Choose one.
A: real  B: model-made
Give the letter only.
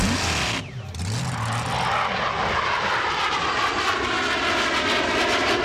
A